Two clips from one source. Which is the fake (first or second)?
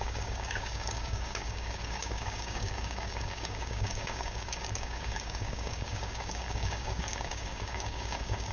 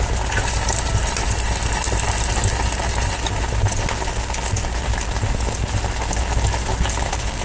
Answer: first